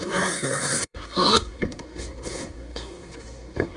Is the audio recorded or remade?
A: remade